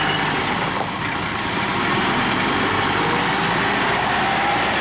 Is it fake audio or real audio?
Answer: real